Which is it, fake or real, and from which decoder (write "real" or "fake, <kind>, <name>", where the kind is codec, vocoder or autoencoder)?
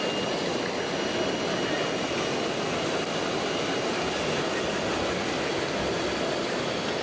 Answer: real